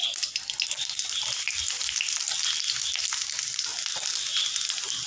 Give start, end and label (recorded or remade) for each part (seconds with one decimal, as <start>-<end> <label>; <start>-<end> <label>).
0.0-5.1 recorded